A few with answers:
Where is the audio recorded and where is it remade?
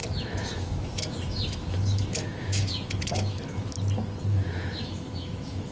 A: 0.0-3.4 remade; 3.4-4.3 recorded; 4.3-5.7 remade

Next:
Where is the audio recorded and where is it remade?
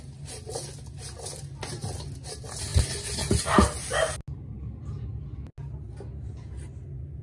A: 0.0-7.2 recorded